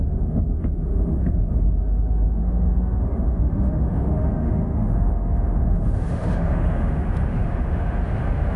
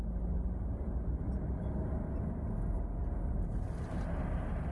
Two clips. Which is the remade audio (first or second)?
first